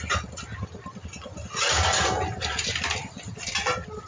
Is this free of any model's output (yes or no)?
yes